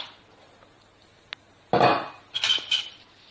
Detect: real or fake real